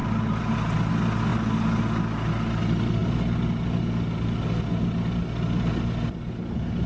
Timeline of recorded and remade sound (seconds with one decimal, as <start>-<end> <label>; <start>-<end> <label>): 0.0-6.9 recorded